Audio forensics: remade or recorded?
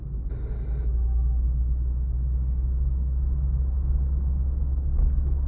recorded